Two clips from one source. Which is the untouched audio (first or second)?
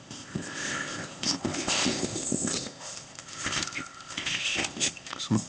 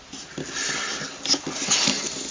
second